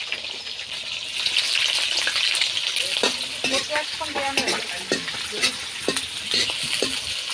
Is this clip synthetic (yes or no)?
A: no